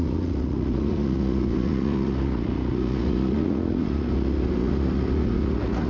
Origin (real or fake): fake